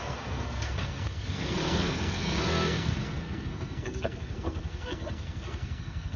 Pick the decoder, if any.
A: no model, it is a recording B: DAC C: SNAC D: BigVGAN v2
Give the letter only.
C